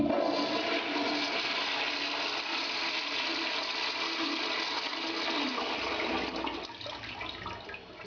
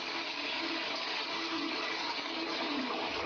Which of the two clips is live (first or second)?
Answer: first